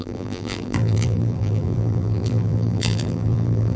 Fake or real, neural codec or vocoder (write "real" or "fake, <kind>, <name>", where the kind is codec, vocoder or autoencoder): fake, vocoder, BigVGAN v2